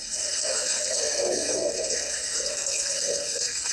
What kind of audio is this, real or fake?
fake